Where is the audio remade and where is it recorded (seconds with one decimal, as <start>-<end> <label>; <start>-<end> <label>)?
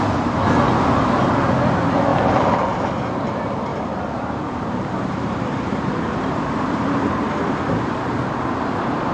0.0-2.1 recorded; 2.1-2.6 remade; 2.6-3.7 recorded; 3.7-7.3 remade; 7.3-9.1 recorded